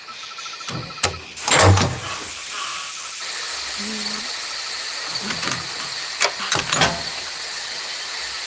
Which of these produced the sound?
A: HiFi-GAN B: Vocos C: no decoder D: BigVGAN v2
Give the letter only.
C